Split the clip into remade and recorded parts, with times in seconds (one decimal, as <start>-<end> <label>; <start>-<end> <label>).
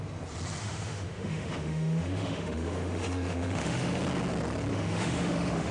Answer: 0.0-0.6 recorded; 0.6-4.0 remade; 4.0-4.7 recorded; 4.7-5.7 remade